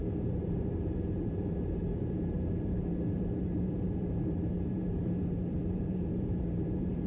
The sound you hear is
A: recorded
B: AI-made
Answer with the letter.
B